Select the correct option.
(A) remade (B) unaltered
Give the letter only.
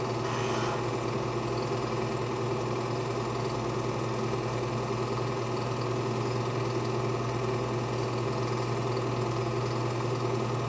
B